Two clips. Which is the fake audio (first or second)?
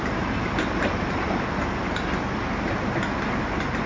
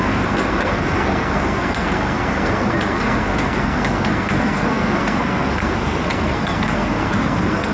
second